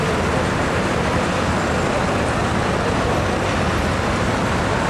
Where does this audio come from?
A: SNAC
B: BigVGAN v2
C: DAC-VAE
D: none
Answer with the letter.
D